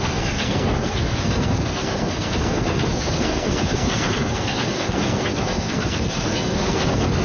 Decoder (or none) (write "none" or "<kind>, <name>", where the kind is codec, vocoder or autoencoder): codec, SNAC